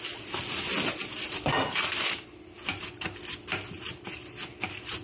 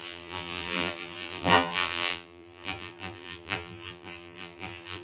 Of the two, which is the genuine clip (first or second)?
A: first